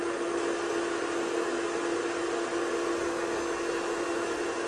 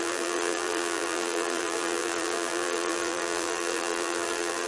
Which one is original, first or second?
first